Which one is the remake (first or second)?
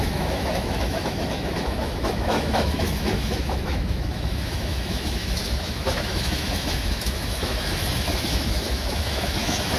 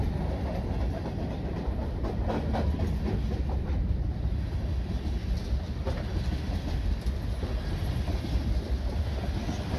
first